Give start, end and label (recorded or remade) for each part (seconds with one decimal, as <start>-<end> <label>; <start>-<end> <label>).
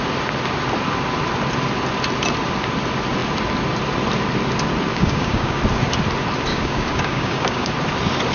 0.0-4.9 recorded; 4.9-5.6 remade; 5.6-6.5 recorded; 6.5-7.7 remade; 7.7-8.3 recorded